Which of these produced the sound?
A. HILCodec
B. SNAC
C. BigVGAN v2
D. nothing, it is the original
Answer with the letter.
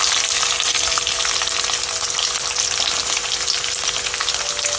D